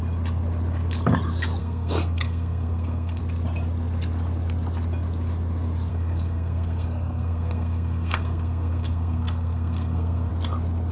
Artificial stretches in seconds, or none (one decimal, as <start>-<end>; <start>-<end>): 1.6-3.2; 5.9-10.3